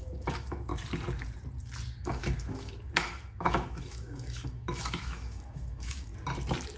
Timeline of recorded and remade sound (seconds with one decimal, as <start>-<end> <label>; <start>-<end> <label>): 0.0-0.7 remade; 0.7-2.0 recorded; 2.0-6.1 remade; 6.1-6.8 recorded